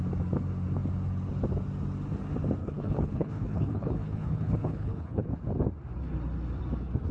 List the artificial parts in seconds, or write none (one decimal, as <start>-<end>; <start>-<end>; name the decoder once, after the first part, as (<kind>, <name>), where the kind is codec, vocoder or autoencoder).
2.6-5.3 (codec, HILCodec)